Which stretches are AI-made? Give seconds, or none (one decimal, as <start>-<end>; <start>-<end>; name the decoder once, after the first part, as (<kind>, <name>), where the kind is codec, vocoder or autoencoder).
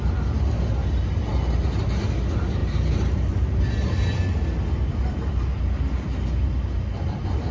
none